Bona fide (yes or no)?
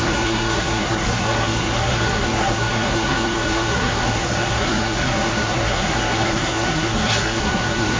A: no